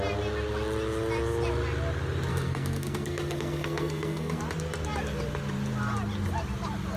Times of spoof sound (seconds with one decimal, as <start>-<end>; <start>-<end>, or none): 2.3-4.4